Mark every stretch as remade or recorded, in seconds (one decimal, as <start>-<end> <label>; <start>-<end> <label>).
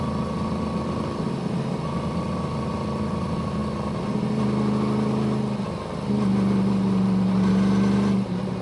0.0-8.6 recorded